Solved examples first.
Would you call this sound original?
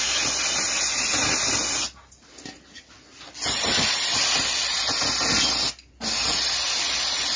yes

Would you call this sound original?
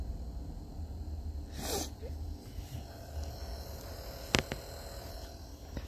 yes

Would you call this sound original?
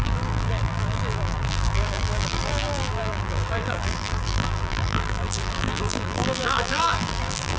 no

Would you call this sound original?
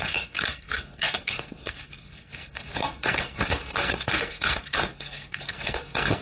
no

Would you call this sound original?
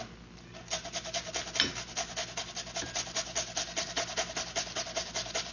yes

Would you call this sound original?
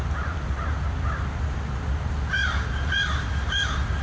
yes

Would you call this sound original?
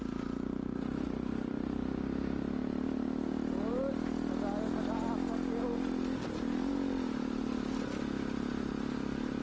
yes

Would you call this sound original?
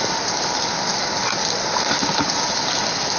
yes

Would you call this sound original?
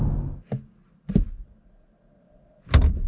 yes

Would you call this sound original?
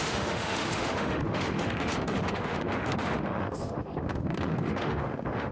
no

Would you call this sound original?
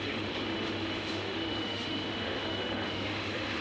no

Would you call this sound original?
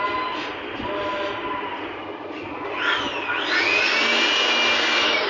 yes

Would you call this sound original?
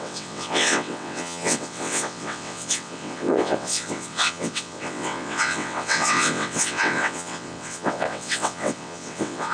no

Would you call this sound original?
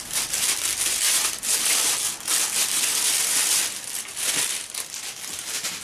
no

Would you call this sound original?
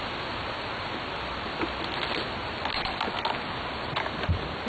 yes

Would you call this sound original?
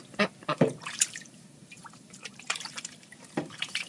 no